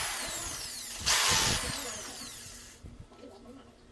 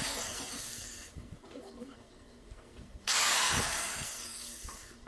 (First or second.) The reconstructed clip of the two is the second